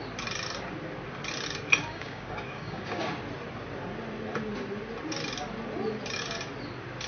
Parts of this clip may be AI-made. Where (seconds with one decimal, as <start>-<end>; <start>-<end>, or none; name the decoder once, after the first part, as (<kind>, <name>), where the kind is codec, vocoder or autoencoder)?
1.8-3.1 (codec, DAC)